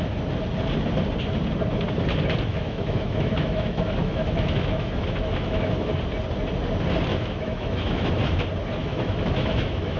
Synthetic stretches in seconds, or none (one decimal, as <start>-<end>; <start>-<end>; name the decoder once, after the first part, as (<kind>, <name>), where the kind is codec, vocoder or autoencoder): 2.5-5.9 (autoencoder, DAC-VAE); 7.1-8.1; 8.8-10.0